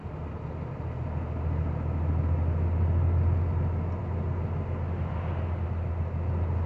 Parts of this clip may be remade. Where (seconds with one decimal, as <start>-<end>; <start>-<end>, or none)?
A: none